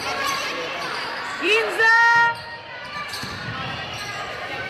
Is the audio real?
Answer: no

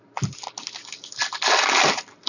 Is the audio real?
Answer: yes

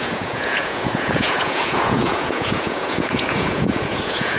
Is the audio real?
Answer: no